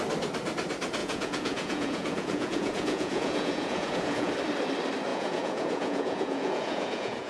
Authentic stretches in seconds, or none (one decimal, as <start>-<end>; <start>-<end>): 0.0-1.0; 4.3-5.1